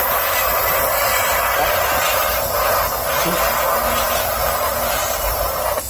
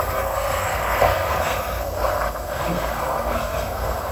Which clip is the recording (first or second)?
first